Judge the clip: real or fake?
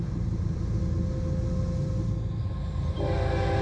real